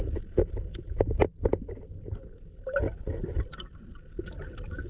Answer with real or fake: real